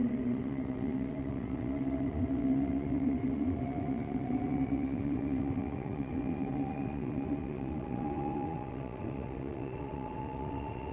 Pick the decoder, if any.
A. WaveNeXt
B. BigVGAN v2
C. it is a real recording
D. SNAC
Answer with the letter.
A